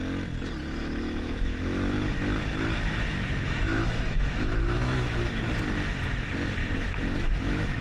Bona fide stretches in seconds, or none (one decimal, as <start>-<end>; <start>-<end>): 0.0-0.8; 5.5-6.6